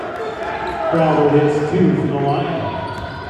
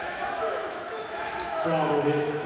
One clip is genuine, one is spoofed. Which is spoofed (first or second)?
second